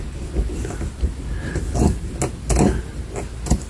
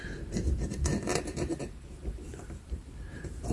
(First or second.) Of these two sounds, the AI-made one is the second